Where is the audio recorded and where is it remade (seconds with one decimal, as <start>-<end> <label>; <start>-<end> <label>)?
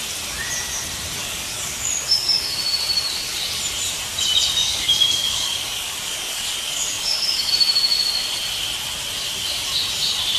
0.0-1.2 recorded; 1.2-2.6 remade; 2.6-4.6 recorded; 4.6-7.5 remade; 7.5-10.4 recorded